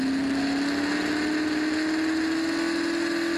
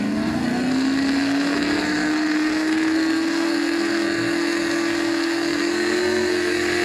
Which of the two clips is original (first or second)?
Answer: first